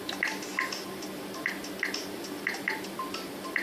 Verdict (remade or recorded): recorded